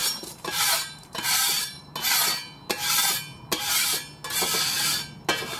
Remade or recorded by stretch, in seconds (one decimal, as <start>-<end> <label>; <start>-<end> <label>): 0.0-1.8 remade; 1.8-5.6 recorded